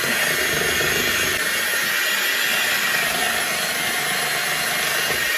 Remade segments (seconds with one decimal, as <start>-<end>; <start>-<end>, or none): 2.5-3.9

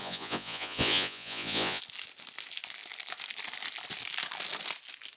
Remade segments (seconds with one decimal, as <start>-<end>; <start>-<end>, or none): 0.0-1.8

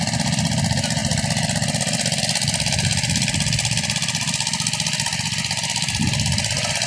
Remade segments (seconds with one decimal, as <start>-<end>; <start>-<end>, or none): none

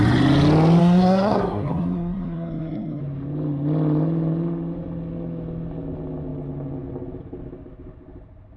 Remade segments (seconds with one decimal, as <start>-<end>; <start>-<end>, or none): 0.8-3.0